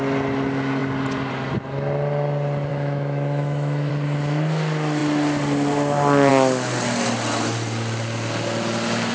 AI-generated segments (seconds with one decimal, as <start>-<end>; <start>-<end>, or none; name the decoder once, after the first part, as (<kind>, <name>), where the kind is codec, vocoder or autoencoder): 2.7-3.9 (autoencoder, DAC-VAE)